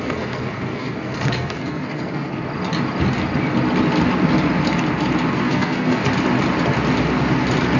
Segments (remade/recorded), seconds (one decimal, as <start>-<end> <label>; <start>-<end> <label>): 0.0-2.3 remade; 2.3-5.3 recorded; 5.3-6.0 remade; 6.0-7.8 recorded